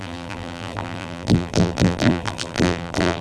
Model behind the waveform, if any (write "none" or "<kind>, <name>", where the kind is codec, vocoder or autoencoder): vocoder, BigVGAN v2